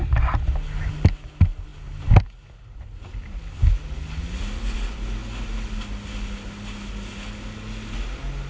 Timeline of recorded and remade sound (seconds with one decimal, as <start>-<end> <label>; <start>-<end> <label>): 0.0-8.5 recorded